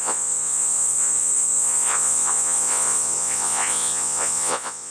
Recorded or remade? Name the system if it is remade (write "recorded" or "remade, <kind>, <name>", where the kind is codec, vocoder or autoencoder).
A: remade, vocoder, Vocos